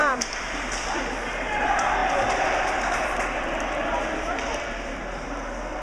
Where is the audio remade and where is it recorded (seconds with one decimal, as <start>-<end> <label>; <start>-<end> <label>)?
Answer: 0.0-5.8 remade